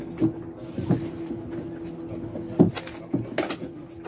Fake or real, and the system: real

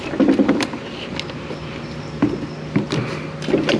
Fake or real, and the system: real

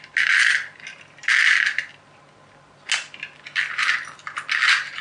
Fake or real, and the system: real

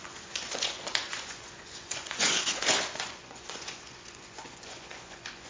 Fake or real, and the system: fake, vocoder, Vocos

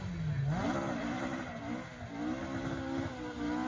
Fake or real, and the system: real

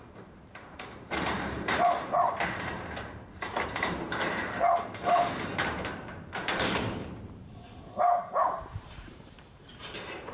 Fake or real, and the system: fake, vocoder, BigVGAN v2